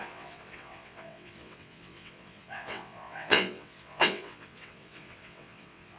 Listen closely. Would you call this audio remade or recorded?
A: remade